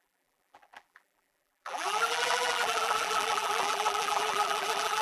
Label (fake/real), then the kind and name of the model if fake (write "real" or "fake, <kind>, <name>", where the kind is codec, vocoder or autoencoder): fake, vocoder, BigVGAN v2